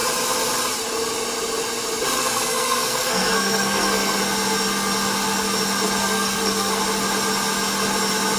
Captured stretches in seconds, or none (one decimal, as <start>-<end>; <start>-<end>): 0.0-2.2; 4.2-6.0; 6.8-8.4